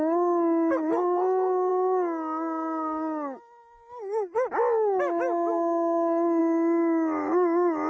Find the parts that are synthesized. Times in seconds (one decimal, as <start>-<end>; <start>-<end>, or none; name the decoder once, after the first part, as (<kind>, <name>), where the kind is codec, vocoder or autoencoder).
none